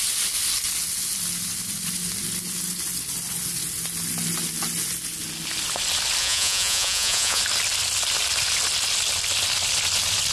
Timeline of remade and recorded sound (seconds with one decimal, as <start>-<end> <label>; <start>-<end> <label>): 0.0-6.2 recorded; 6.2-7.4 remade; 7.4-10.3 recorded